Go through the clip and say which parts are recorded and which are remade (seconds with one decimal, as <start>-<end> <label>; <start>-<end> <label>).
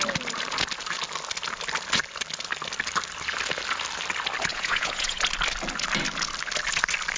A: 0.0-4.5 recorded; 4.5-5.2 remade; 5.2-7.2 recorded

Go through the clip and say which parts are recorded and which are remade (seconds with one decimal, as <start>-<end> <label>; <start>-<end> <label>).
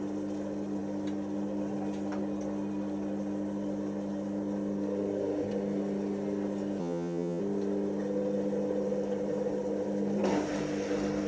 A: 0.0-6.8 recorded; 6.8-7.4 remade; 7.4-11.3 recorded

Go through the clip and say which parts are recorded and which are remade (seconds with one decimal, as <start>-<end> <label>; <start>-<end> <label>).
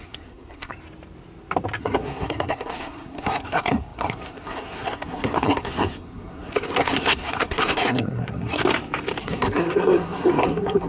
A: 0.0-0.7 remade; 0.7-1.8 recorded; 1.8-8.6 remade; 8.6-9.2 recorded; 9.2-10.9 remade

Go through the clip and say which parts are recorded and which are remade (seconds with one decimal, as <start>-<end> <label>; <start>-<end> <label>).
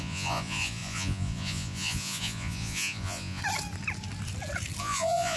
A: 0.0-3.4 remade; 3.4-4.8 recorded; 4.8-5.4 remade